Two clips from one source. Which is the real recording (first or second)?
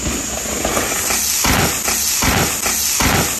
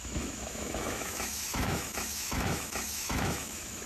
first